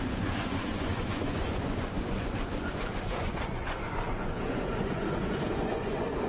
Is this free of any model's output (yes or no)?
no